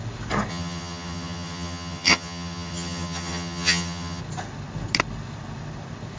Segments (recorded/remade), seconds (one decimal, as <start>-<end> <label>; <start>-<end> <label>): 0.0-0.5 recorded; 0.5-4.2 remade; 4.2-6.2 recorded